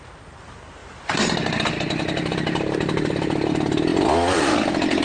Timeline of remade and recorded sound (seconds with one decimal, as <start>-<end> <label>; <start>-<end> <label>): 0.0-0.8 recorded; 0.8-3.5 remade; 3.5-3.9 recorded; 3.9-4.5 remade; 4.5-5.0 recorded